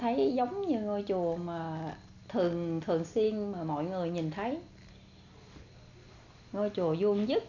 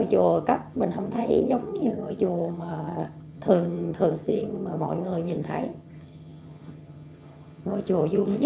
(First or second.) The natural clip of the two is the first